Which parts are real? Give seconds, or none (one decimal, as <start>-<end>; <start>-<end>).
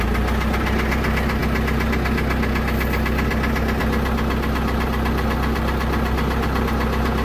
0.0-7.2